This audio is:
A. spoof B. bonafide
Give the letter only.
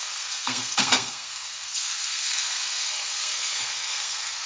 A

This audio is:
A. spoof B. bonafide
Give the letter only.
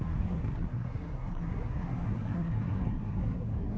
A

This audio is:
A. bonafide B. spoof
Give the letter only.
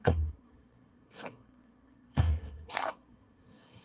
B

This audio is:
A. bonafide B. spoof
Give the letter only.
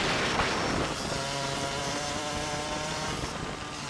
A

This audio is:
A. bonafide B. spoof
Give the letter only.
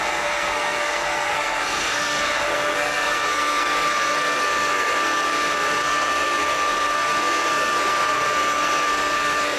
B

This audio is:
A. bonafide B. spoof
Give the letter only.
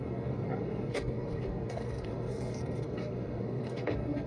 B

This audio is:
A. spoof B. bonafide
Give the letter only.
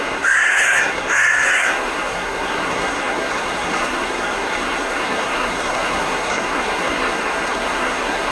A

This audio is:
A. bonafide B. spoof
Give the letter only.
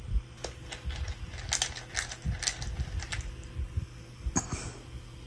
A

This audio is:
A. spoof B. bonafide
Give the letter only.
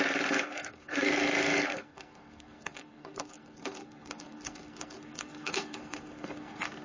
A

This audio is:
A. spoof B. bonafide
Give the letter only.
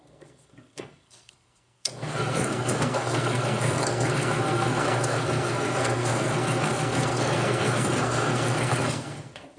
A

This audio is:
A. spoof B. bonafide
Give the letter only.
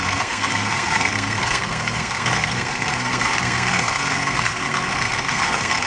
A